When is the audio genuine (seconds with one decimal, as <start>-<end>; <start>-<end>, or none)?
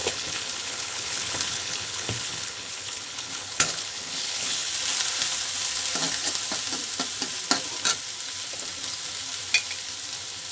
4.7-10.5